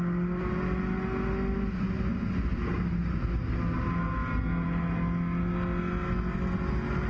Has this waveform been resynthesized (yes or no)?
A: no